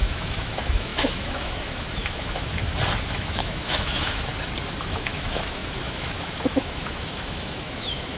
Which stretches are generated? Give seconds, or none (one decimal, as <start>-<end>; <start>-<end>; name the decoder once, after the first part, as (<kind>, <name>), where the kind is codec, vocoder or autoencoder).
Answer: 0.0-2.6 (autoencoder, DAC-VAE); 3.1-4.3; 4.8-8.2